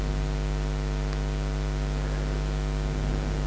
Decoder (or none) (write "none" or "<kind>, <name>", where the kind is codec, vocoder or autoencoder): none